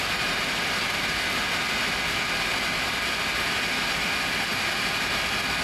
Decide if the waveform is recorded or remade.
recorded